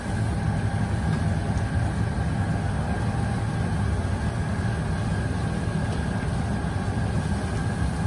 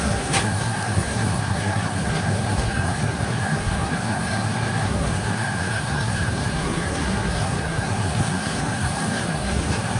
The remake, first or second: second